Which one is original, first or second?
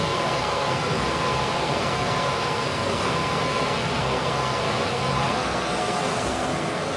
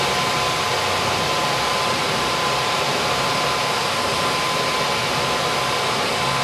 second